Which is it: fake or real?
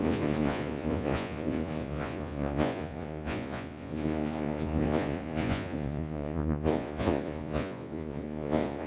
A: fake